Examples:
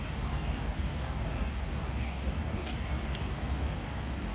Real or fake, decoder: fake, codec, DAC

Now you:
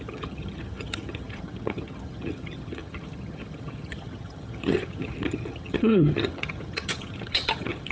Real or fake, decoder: fake, vocoder, HiFi-GAN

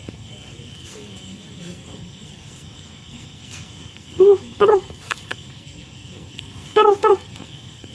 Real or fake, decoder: fake, codec, SNAC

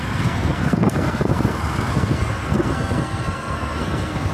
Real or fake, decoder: fake, codec, SNAC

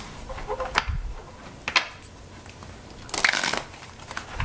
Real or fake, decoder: real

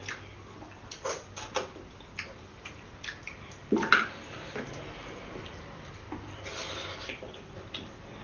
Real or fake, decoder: real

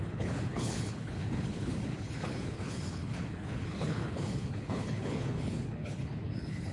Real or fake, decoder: fake, codec, HILCodec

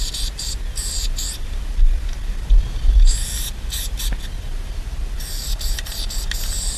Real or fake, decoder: real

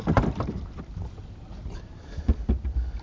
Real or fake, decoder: real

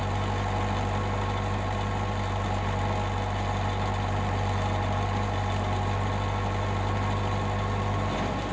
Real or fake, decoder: real